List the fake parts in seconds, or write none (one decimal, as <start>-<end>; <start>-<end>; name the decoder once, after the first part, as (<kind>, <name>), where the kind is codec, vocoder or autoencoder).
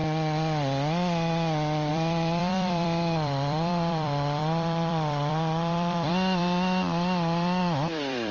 1.9-8.3 (vocoder, BigVGAN v2)